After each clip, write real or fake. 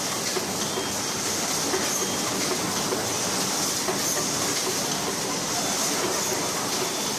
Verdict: real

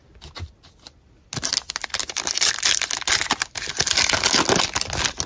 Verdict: real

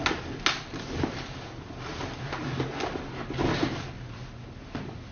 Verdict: real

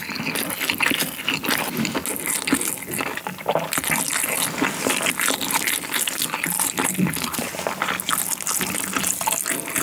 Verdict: real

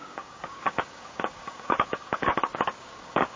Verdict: fake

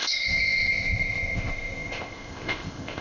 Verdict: fake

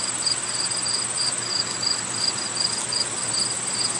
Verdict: real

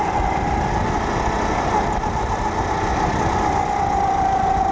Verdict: real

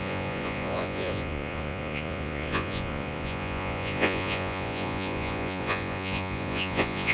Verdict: fake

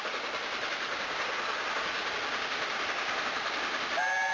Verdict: real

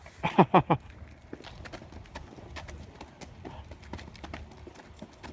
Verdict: real